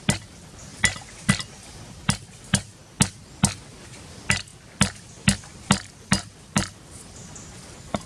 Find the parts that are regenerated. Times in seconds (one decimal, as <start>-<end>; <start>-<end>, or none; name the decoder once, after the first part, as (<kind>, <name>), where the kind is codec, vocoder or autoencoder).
0.0-0.7 (vocoder, BigVGAN v2); 1.3-2.8; 4.1-4.5; 6.0-7.2